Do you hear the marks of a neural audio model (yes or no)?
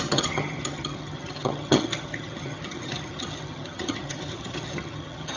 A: yes